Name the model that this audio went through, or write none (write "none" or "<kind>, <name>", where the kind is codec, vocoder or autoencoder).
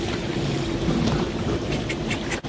none